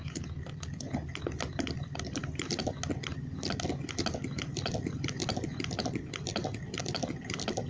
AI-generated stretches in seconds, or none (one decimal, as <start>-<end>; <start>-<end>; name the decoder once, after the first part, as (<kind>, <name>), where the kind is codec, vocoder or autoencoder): none